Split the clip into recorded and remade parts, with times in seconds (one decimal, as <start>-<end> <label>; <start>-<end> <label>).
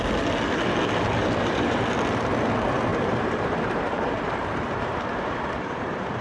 0.0-1.2 recorded; 1.2-1.8 remade; 1.8-2.9 recorded; 2.9-6.2 remade